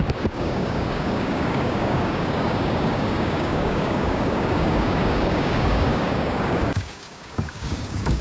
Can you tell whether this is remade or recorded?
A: remade